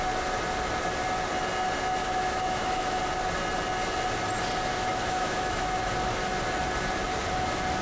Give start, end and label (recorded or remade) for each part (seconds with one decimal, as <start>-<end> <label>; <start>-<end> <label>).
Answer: 0.0-2.0 recorded; 2.0-3.0 remade; 3.0-4.7 recorded; 4.7-5.9 remade; 5.9-7.8 recorded